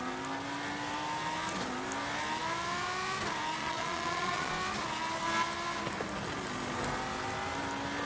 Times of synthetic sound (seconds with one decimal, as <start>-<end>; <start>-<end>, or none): 3.6-4.5